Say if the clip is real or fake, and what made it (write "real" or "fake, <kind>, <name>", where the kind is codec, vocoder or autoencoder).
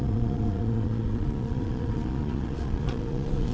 fake, vocoder, Vocos